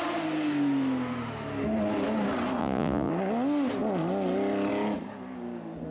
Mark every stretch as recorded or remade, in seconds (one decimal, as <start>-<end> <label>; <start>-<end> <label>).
0.0-2.6 recorded; 2.6-3.1 remade; 3.1-5.9 recorded